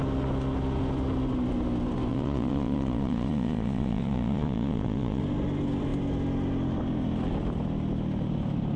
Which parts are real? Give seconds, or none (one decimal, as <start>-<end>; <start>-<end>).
0.0-2.1; 5.2-8.8